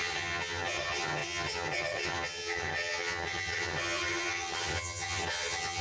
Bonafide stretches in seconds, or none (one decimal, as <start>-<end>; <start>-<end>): none